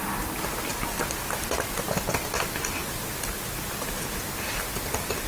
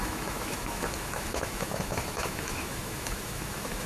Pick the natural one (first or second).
first